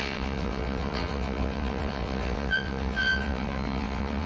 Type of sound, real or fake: fake